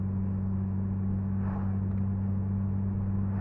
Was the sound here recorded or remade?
recorded